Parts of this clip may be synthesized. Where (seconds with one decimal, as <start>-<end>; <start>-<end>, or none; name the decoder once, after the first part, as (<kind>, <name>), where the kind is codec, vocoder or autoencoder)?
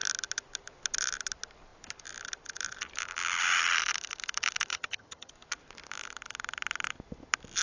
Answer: 4.7-5.3 (vocoder, HiFi-GAN)